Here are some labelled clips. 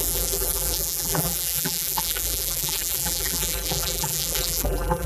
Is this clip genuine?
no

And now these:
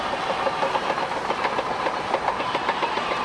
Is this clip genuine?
no